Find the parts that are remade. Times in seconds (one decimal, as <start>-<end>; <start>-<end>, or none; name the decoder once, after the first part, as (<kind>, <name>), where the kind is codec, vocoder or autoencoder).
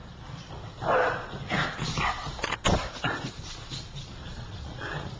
4.2-5.2 (vocoder, Vocos)